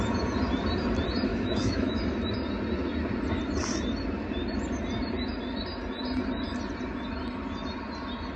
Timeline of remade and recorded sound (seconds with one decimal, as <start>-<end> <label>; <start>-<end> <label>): 0.0-1.3 recorded; 1.3-2.0 remade; 2.0-8.4 recorded